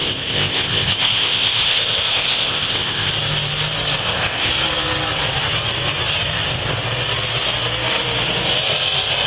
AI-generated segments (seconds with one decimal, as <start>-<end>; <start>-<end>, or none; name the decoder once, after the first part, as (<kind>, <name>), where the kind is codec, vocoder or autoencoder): 0.0-3.1 (codec, ZipCodec); 4.0-4.5